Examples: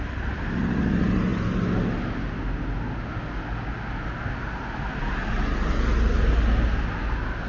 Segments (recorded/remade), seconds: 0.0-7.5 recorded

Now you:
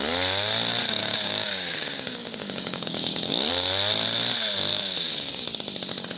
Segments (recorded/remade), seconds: 0.0-1.0 recorded; 1.0-3.5 remade; 3.5-4.7 recorded; 4.7-5.4 remade; 5.4-6.2 recorded

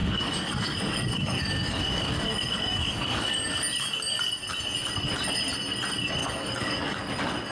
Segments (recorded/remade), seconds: 0.0-3.6 remade; 3.6-6.2 recorded; 6.2-7.0 remade; 7.0-7.5 recorded

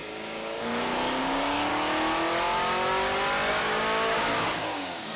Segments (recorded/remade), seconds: 0.0-1.7 remade; 1.7-3.5 recorded; 3.5-5.2 remade

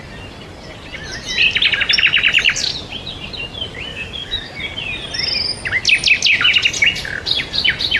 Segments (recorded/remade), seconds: 0.0-3.9 recorded; 3.9-4.6 remade; 4.6-8.0 recorded

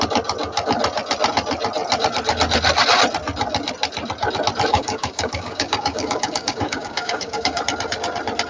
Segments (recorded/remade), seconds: 0.0-4.7 recorded; 4.7-7.6 remade; 7.6-8.5 recorded

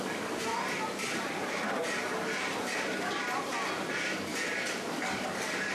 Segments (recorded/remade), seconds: 0.0-0.5 remade; 0.5-3.9 recorded; 3.9-4.3 remade; 4.3-4.9 recorded; 4.9-5.7 remade

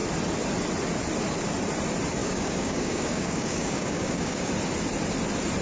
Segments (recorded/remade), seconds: 0.0-2.2 recorded; 2.2-4.5 remade; 4.5-5.6 recorded